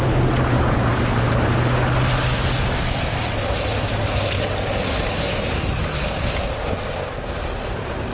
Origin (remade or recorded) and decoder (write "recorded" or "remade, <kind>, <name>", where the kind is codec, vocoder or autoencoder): recorded